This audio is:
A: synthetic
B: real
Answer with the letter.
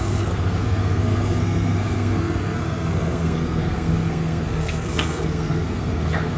A